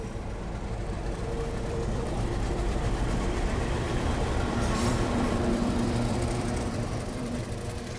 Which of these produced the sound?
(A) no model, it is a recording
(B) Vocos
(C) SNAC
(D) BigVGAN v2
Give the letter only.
D